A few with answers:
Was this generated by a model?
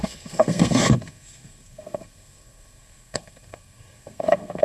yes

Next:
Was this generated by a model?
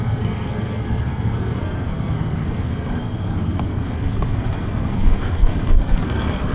yes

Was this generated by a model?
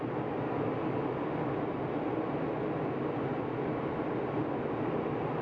no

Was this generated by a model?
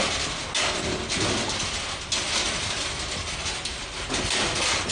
no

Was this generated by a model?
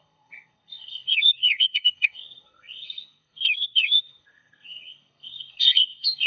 yes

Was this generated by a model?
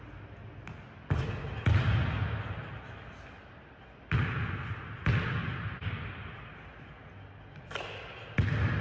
no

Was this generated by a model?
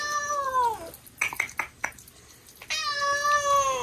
no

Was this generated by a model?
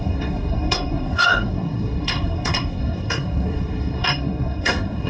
yes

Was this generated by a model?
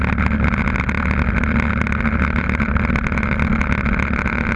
no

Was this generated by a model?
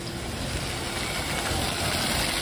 no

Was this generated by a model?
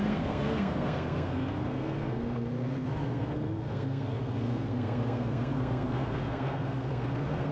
yes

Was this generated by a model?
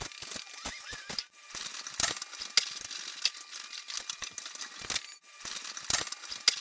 no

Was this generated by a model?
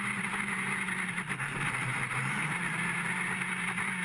no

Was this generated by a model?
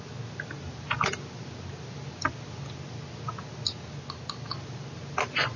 no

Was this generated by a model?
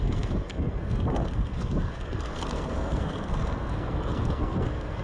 yes